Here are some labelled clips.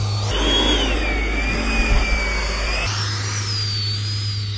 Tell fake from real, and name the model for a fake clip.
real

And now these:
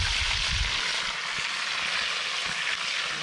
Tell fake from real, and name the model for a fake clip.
real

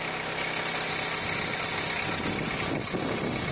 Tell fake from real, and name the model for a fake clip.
real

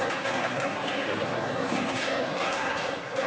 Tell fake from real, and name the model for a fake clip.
fake, codec, SNAC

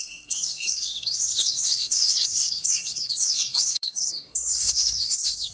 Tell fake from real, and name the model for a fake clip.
fake, codec, SNAC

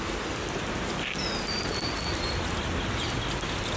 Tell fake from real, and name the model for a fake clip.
real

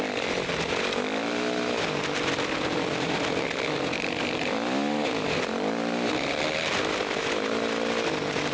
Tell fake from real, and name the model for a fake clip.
real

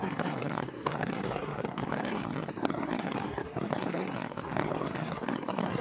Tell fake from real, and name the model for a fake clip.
fake, codec, SNAC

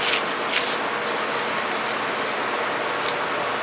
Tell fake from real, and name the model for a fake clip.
real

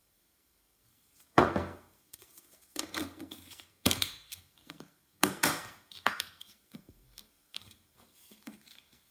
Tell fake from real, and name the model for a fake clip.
fake, codec, SNAC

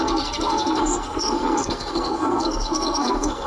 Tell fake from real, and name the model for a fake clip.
fake, codec, SNAC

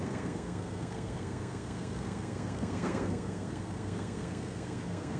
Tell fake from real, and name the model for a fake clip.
fake, codec, SNAC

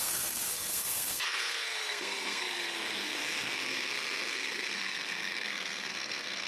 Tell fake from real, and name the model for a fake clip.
fake, codec, SNAC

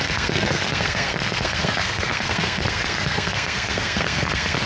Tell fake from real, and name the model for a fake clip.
fake, codec, SNAC